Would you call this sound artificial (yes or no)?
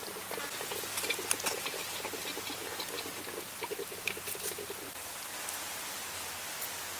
no